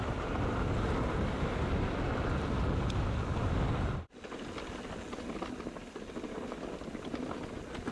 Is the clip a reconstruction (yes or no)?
no